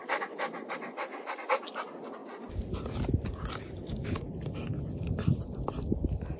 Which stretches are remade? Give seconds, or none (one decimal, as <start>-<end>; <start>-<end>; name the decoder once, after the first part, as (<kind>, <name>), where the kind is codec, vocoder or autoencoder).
none